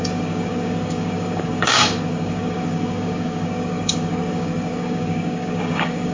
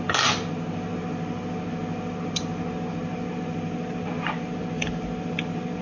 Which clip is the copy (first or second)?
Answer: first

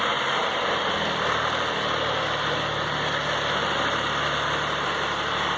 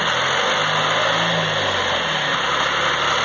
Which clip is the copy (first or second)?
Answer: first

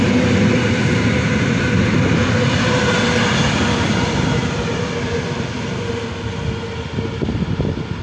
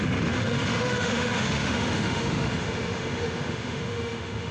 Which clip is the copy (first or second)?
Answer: second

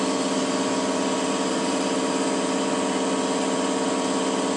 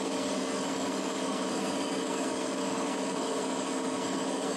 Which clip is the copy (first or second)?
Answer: second